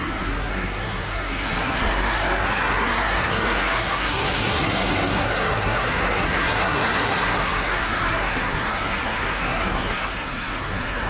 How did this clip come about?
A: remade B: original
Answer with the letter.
A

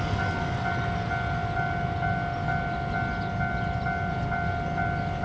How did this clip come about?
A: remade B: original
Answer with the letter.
B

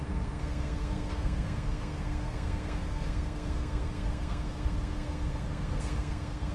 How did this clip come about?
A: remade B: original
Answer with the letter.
A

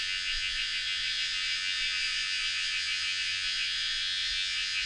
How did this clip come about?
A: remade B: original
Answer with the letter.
A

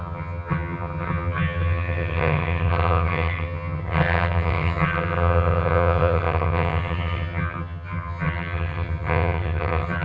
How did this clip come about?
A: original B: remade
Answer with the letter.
B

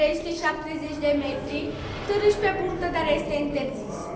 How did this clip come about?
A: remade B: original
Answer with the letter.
B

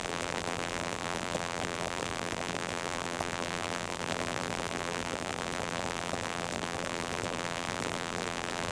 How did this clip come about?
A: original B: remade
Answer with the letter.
B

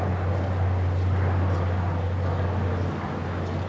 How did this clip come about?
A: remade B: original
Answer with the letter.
B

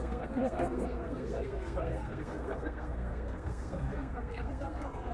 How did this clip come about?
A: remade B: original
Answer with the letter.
A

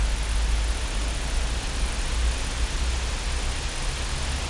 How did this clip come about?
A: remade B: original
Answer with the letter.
B